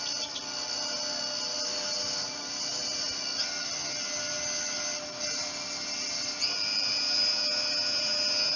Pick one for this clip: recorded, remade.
recorded